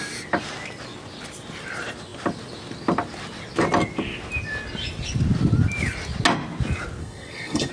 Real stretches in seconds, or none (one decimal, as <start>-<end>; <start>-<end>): 0.0-7.0